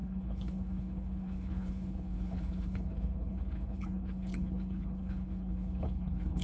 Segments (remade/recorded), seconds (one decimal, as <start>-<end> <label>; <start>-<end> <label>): 0.0-6.4 remade